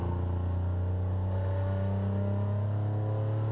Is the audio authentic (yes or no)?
yes